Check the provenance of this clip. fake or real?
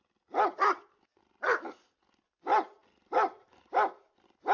real